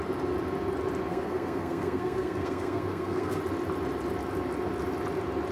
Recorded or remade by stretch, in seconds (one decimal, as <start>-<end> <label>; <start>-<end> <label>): 0.0-1.1 recorded; 1.1-3.4 remade; 3.4-5.5 recorded